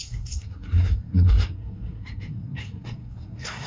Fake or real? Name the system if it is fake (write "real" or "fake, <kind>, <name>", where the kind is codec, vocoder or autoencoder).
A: fake, codec, SNAC